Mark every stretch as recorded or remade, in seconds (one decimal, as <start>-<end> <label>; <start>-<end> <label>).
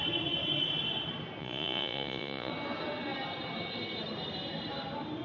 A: 0.0-1.4 recorded; 1.4-2.5 remade; 2.5-5.2 recorded